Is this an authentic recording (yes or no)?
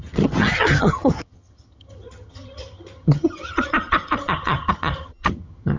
no